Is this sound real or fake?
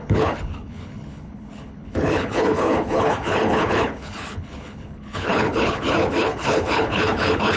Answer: fake